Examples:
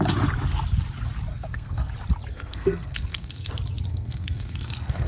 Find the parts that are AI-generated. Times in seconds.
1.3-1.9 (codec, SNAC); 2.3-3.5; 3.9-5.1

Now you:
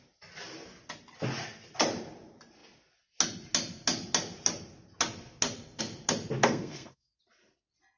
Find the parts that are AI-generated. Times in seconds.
6.4-7.2 (codec, SNAC)

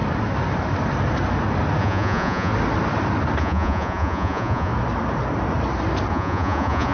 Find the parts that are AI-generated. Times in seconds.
1.8-2.5 (vocoder, Vocos); 3.4-4.7; 6.1-6.9